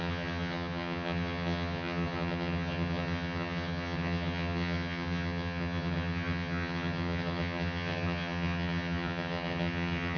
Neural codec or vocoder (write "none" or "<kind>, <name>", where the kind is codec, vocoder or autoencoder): vocoder, HiFi-GAN